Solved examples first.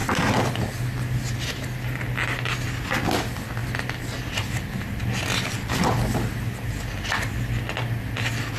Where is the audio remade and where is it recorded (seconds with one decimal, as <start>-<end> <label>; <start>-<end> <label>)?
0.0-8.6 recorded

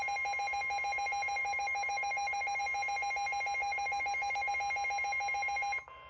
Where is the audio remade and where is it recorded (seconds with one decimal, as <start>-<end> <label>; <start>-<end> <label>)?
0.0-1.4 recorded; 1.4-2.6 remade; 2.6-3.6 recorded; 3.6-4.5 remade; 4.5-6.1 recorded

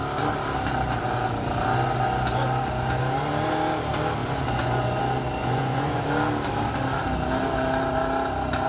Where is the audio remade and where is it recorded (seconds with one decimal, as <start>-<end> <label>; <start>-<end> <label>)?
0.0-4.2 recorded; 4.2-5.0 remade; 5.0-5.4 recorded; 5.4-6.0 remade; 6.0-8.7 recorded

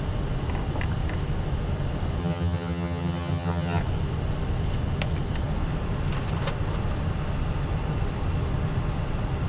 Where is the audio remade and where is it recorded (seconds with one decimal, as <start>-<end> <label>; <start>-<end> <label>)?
0.0-2.2 recorded; 2.2-3.8 remade; 3.8-9.5 recorded